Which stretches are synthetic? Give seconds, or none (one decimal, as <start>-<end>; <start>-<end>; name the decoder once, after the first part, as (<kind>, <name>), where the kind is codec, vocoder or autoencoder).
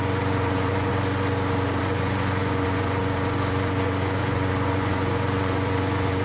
0.0-0.9 (vocoder, Vocos); 1.8-6.2